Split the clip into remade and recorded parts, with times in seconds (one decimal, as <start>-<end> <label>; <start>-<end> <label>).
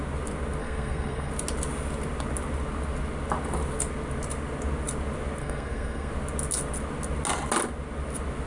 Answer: 0.0-0.6 recorded; 0.6-1.3 remade; 1.3-5.4 recorded; 5.4-6.1 remade; 6.1-8.5 recorded